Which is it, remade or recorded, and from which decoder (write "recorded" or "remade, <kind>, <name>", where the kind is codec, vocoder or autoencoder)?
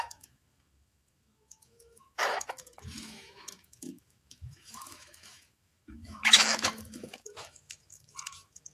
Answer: remade, autoencoder, DAC-VAE